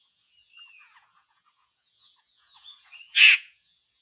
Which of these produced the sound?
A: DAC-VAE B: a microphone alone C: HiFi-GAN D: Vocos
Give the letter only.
D